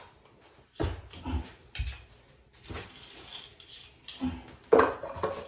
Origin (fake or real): real